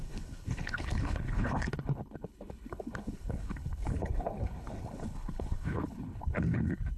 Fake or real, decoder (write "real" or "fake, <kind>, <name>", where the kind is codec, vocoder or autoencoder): fake, codec, HILCodec